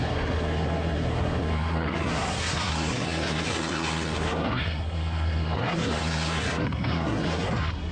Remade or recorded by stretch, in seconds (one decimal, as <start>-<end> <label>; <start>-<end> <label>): 0.0-7.9 remade